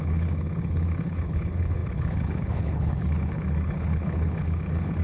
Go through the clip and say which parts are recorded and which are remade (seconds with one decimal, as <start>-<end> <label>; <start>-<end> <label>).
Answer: 0.0-5.0 remade